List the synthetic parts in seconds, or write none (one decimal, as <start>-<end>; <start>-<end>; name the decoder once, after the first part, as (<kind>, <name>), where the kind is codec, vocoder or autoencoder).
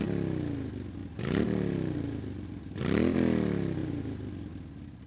1.0-2.8 (vocoder, BigVGAN v2); 3.8-4.3